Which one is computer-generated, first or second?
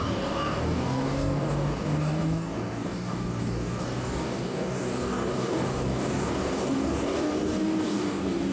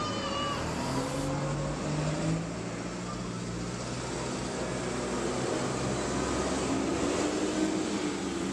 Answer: first